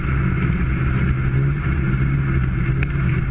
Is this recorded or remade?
recorded